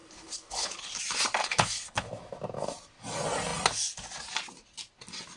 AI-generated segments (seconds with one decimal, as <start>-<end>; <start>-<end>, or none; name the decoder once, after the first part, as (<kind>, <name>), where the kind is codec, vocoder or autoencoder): 0.0-1.0 (codec, HILCodec); 1.4-2.1